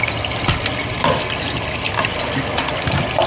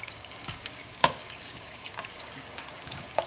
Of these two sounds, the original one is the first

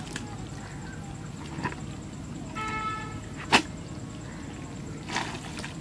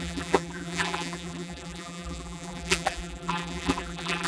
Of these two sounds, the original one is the first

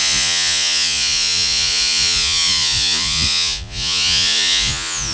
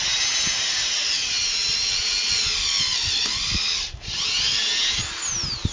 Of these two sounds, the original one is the second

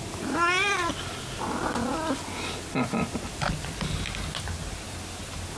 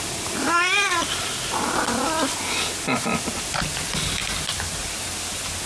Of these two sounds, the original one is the first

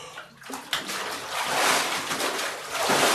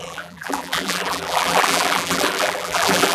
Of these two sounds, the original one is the first